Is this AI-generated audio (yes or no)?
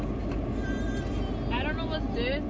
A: no